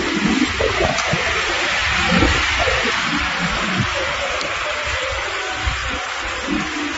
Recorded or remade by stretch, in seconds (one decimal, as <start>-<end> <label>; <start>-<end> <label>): 0.0-1.8 recorded; 1.8-4.2 remade; 4.2-5.8 recorded; 5.8-7.0 remade